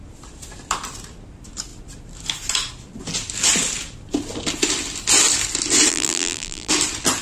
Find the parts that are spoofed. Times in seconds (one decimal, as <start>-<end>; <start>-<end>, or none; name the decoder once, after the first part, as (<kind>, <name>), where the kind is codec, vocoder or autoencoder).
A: 5.9-6.7 (vocoder, BigVGAN v2)